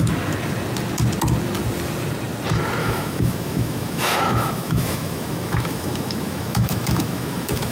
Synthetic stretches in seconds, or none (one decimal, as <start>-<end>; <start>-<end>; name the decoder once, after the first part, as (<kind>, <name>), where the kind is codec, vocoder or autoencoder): 2.8-7.7 (autoencoder, DAC-VAE)